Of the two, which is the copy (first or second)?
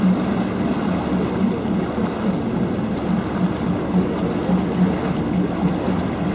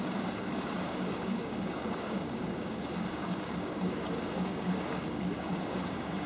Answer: second